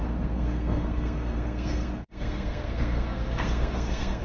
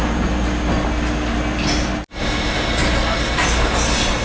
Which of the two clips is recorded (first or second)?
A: second